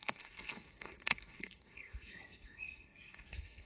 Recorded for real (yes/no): no